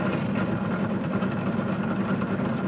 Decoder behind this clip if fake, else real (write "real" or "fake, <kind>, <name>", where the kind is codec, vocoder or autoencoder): real